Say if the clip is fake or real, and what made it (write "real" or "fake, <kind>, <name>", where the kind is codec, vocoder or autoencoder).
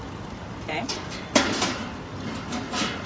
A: fake, vocoder, BigVGAN v2